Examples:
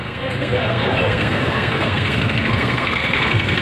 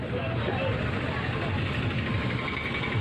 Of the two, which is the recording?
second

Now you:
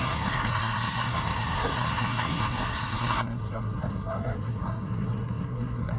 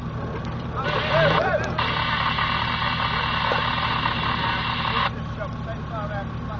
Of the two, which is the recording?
second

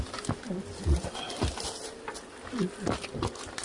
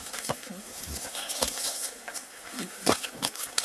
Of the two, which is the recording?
first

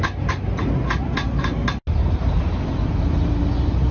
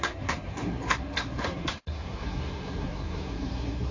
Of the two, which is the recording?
first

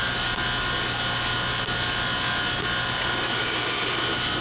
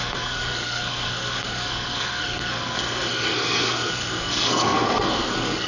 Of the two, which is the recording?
first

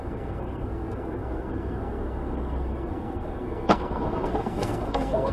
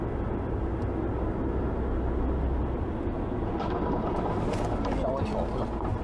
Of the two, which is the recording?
second